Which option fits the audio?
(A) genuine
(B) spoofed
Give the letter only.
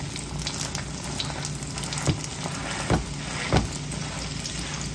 A